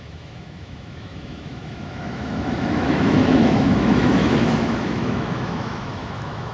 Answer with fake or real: fake